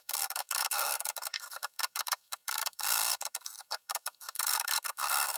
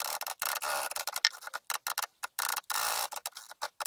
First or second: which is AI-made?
first